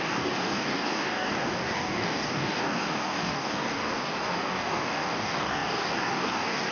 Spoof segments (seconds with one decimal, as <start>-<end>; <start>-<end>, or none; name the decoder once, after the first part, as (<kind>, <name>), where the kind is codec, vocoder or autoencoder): 0.0-6.7 (codec, DAC)